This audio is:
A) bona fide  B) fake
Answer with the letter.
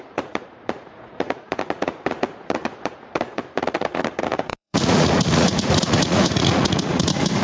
B